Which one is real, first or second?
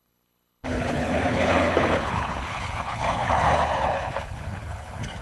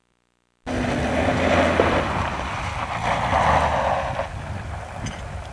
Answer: second